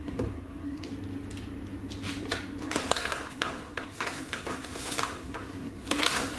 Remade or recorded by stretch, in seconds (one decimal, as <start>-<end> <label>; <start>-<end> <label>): 0.0-0.9 remade; 0.9-2.6 recorded; 2.6-6.4 remade

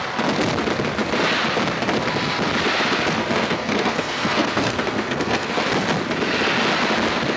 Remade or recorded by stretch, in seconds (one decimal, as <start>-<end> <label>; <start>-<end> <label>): 0.0-3.2 recorded; 3.2-5.5 remade; 5.5-7.4 recorded

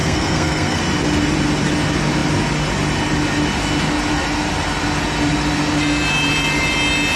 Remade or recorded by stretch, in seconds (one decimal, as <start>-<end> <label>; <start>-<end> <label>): 0.0-0.8 remade; 0.8-7.2 recorded

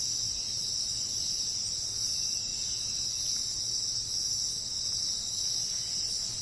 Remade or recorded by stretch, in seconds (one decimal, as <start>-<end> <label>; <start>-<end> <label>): 0.0-6.4 recorded

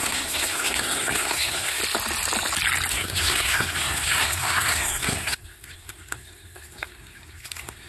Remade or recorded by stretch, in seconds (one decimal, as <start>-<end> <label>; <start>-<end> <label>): 0.0-1.8 remade; 1.8-2.9 recorded; 2.9-7.9 remade

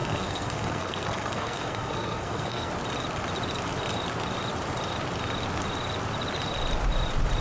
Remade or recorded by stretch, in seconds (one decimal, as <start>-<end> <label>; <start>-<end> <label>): 0.0-2.7 remade; 2.7-7.4 recorded

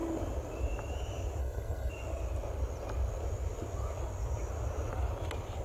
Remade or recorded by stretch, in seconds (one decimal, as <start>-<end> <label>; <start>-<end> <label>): 0.0-1.4 recorded; 1.4-1.9 remade; 1.9-5.6 recorded